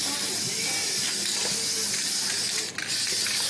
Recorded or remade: recorded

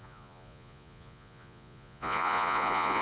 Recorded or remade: remade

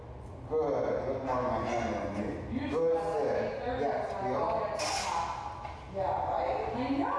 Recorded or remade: recorded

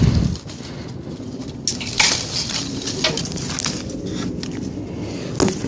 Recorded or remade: recorded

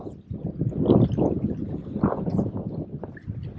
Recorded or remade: recorded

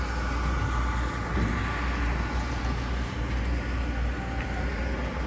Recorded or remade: recorded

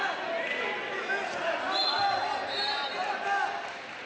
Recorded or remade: recorded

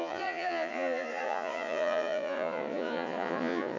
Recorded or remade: remade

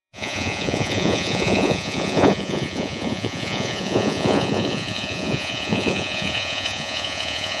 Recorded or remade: remade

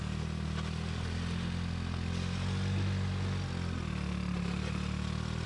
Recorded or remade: recorded